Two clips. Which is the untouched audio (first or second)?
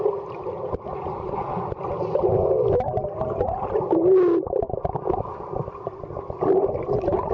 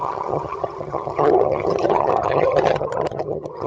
first